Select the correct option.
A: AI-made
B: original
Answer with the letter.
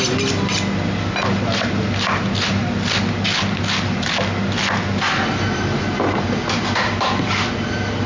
B